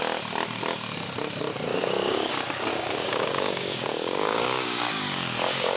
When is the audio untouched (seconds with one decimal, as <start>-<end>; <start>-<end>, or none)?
0.0-1.7; 2.3-2.7